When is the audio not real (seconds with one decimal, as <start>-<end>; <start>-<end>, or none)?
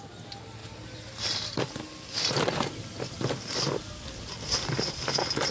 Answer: none